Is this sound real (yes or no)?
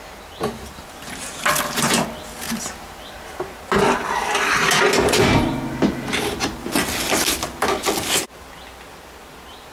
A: yes